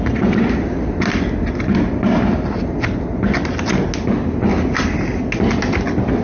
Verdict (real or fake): real